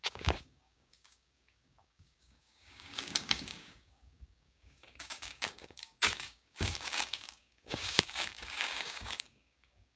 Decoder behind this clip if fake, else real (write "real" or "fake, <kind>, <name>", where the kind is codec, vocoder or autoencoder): fake, codec, DAC